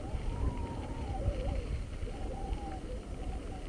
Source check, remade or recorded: recorded